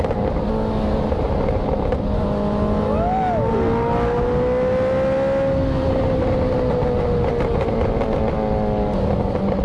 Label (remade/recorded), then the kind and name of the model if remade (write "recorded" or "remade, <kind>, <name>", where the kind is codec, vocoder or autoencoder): recorded